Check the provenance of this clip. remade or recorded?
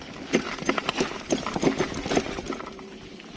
recorded